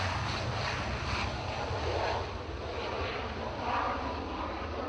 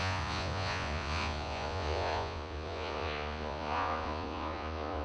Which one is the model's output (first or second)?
second